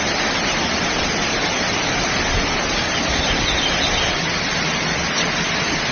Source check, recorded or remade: recorded